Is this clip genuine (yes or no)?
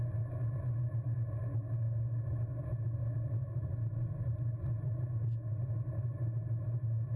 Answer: yes